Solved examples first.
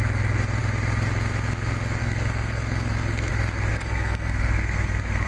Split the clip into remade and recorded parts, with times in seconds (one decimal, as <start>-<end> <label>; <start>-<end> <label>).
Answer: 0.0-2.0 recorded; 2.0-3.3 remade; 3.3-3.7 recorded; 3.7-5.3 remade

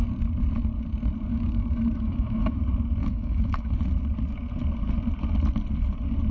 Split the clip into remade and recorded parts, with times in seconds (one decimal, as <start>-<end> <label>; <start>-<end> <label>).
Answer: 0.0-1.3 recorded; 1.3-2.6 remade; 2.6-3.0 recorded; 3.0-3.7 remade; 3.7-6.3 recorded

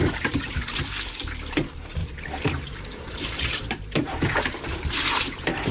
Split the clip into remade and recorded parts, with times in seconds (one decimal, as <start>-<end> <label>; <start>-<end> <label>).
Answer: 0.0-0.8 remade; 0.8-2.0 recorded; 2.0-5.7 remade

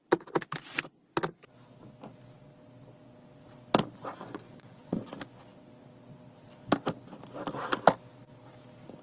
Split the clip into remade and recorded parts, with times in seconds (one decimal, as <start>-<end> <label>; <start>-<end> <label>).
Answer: 0.0-4.0 recorded; 4.0-5.1 remade; 5.1-9.0 recorded

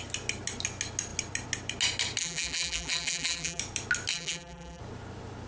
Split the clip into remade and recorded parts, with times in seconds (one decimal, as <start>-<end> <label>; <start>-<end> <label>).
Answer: 0.0-2.2 recorded; 2.2-3.6 remade; 3.6-4.1 recorded; 4.1-4.8 remade; 4.8-5.5 recorded